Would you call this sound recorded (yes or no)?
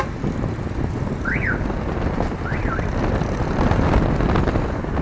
yes